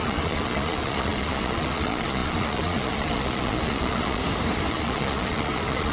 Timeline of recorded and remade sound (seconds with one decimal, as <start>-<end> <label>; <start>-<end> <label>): 0.0-4.2 remade; 4.2-4.7 recorded; 4.7-5.9 remade

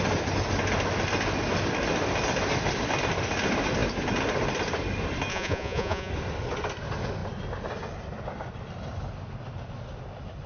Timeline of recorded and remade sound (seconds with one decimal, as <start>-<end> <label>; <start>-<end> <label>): 0.0-5.3 recorded; 5.3-6.1 remade; 6.1-10.5 recorded

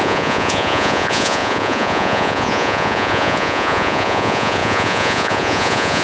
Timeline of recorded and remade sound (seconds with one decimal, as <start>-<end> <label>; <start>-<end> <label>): 0.0-6.0 remade

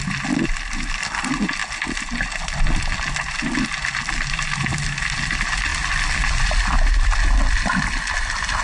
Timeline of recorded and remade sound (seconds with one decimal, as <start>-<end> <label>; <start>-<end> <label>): 0.0-8.6 recorded